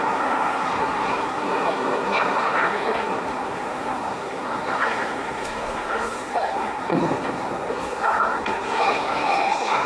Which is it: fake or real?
fake